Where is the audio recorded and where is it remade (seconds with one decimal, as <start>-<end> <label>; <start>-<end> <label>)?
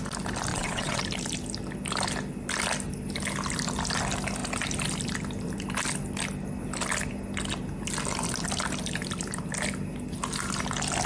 0.0-0.5 recorded; 0.5-1.0 remade; 1.0-11.1 recorded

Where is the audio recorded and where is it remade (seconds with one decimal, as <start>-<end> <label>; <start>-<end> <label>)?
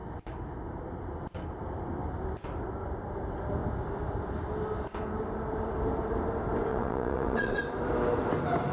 0.0-6.7 recorded; 6.7-7.6 remade; 7.6-8.7 recorded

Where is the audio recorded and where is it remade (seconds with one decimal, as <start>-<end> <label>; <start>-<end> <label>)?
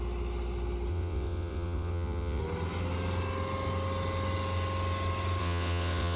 0.0-0.9 recorded; 0.9-2.4 remade; 2.4-5.4 recorded; 5.4-6.2 remade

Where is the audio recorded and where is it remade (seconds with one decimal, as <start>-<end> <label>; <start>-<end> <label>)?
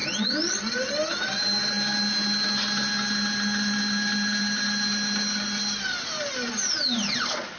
0.0-7.6 recorded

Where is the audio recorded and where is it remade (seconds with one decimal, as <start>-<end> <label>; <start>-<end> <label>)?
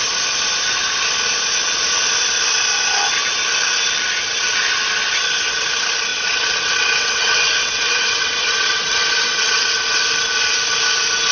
0.0-6.1 recorded; 6.1-10.0 remade; 10.0-11.3 recorded